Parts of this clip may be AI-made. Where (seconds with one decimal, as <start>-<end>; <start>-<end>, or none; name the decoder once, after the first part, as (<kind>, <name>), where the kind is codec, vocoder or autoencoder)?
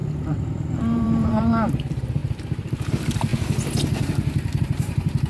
0.0-3.3 (vocoder, BigVGAN v2); 4.6-5.3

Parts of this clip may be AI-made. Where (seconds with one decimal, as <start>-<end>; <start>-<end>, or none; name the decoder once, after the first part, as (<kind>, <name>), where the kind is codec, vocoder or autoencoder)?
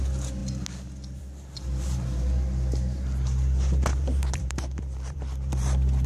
3.9-6.1 (vocoder, BigVGAN v2)